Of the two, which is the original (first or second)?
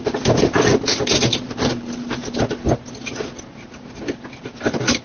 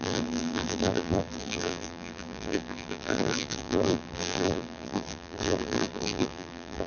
first